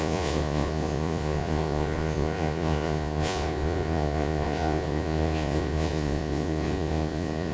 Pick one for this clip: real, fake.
fake